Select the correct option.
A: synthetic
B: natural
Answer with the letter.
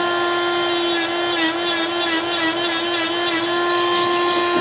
B